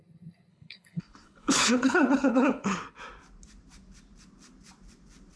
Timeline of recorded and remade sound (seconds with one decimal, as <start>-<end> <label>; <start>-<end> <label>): 0.0-0.5 recorded; 0.5-3.0 remade; 3.0-5.4 recorded